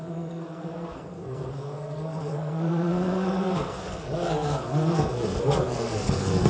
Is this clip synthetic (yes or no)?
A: yes